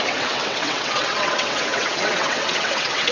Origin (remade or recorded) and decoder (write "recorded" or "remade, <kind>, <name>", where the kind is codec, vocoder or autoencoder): remade, vocoder, WaveNeXt